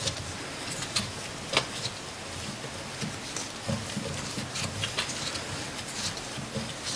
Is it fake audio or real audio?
real